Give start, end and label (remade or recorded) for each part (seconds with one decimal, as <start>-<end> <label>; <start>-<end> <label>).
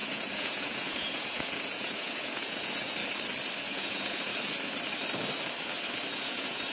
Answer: 0.0-3.0 remade; 3.0-3.7 recorded; 3.7-4.3 remade; 4.3-6.1 recorded; 6.1-6.7 remade